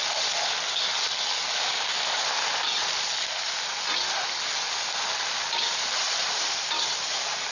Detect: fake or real real